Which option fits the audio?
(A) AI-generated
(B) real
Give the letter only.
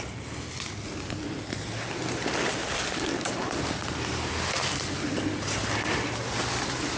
B